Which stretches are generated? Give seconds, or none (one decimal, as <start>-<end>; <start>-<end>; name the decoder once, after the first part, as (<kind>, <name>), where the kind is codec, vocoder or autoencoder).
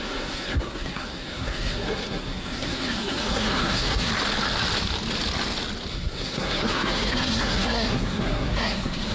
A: 0.0-4.1 (codec, SNAC); 5.9-9.1